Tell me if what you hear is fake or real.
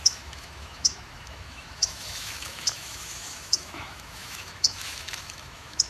fake